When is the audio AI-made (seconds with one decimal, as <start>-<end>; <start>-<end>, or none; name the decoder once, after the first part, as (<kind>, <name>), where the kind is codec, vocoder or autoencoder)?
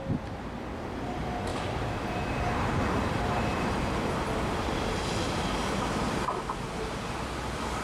none